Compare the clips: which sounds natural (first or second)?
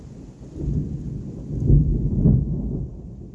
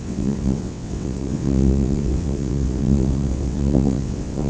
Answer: first